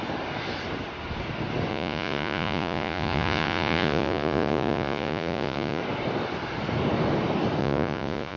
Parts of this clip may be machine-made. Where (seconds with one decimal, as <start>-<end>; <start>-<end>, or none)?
1.7-5.8; 7.6-8.4